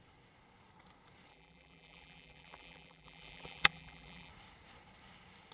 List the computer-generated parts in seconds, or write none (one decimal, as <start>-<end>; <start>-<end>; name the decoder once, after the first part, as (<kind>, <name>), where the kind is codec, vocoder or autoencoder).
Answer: 1.3-4.3 (vocoder, BigVGAN v2)